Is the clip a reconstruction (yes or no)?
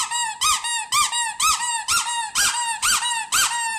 no